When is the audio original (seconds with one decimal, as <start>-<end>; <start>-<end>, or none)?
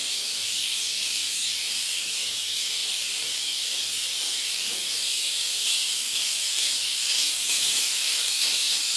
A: none